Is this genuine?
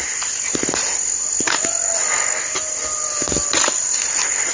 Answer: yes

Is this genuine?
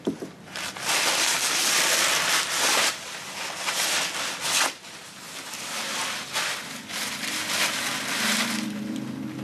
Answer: yes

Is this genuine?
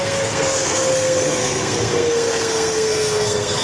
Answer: no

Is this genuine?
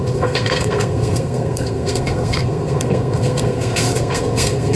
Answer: no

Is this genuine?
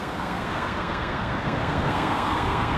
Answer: no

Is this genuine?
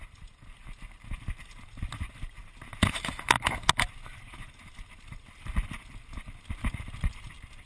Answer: yes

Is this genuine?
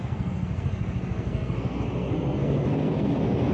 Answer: no